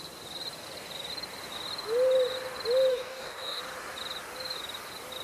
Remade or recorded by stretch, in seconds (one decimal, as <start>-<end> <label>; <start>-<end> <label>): 0.0-2.9 recorded; 2.9-3.6 remade; 3.6-5.2 recorded